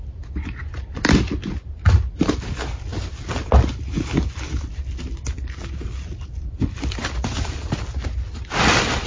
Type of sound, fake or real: real